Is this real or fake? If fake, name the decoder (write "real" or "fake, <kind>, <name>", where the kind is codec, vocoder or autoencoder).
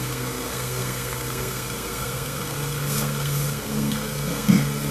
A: fake, codec, SNAC